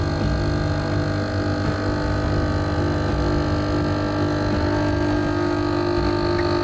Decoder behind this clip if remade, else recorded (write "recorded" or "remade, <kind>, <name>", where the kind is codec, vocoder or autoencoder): recorded